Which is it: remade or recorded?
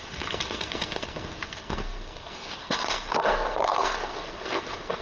remade